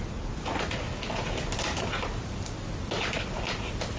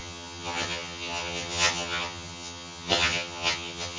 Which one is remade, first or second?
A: second